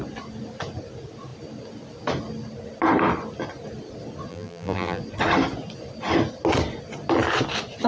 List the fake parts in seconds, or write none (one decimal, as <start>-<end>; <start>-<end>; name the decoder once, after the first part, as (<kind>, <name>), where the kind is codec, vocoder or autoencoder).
4.3-5.0 (vocoder, BigVGAN v2)

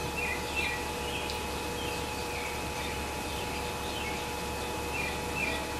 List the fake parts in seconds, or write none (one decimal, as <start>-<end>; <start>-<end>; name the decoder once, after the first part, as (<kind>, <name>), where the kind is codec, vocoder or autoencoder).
2.2-3.4 (vocoder, BigVGAN v2)

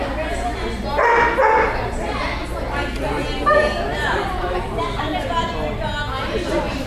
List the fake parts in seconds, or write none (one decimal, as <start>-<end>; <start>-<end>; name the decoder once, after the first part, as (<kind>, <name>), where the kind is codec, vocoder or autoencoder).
3.9-4.8 (vocoder, BigVGAN v2)